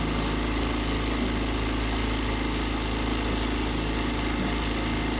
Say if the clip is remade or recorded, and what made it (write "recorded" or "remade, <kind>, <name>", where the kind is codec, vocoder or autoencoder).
recorded